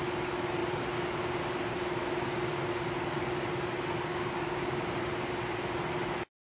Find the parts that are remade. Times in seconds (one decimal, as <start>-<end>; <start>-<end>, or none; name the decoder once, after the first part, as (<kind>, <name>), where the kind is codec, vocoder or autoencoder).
4.1-4.9 (codec, DAC)